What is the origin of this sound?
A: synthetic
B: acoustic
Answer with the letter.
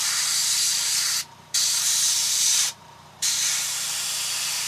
A